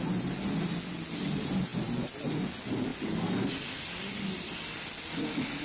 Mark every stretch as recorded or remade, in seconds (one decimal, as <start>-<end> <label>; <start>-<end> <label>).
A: 0.0-5.6 recorded